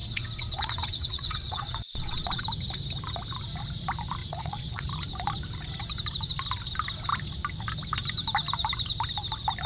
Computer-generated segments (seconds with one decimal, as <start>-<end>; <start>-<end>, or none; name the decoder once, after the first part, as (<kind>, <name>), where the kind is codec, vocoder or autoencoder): 0.0-2.4 (vocoder, WaveNeXt); 4.2-4.9